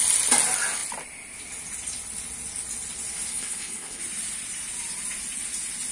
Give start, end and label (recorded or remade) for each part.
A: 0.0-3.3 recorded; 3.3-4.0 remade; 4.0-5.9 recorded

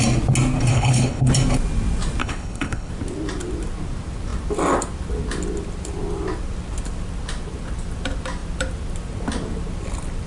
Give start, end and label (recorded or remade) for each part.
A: 0.0-0.7 recorded; 0.7-1.3 remade; 1.3-2.2 recorded; 2.2-2.9 remade; 2.9-10.3 recorded